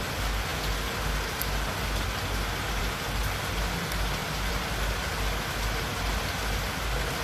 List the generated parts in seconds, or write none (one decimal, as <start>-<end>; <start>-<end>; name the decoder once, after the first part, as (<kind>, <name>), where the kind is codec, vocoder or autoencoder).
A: 4.2-4.7 (vocoder, BigVGAN v2)